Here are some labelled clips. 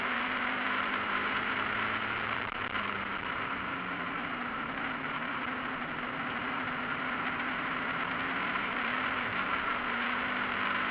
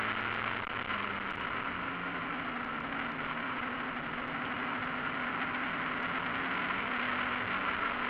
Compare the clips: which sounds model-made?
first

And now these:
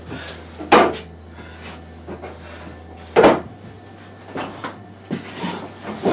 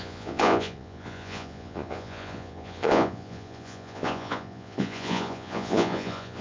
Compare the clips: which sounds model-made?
second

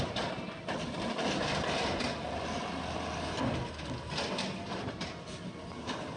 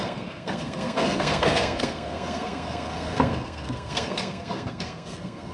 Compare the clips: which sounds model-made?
second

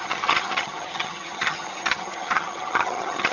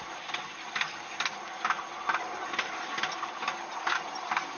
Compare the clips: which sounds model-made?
first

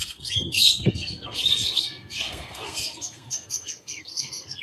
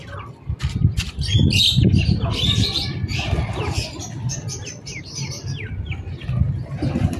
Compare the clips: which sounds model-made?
first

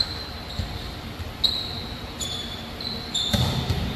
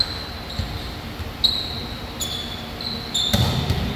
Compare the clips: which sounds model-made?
first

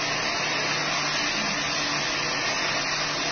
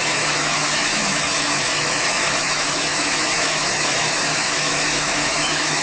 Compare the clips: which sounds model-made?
second